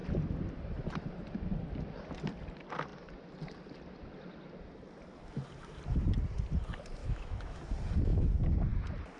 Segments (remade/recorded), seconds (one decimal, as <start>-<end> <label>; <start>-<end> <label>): 0.0-7.0 recorded; 7.0-7.6 remade; 7.6-9.2 recorded